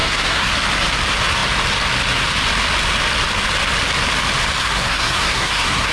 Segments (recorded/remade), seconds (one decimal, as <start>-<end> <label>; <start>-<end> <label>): 0.0-0.5 remade; 0.5-4.6 recorded; 4.6-5.9 remade